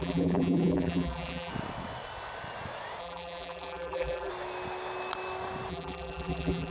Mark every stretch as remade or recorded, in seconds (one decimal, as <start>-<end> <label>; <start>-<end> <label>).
0.0-1.5 remade; 1.5-3.0 recorded; 3.0-4.3 remade; 4.3-5.7 recorded; 5.7-6.7 remade